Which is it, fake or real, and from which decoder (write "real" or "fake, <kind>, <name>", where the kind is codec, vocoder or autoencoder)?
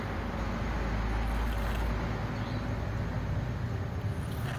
real